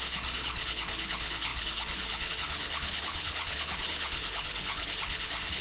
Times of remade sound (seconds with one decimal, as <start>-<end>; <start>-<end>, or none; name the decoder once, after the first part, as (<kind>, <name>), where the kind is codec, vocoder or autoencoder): 0.0-5.6 (codec, HILCodec)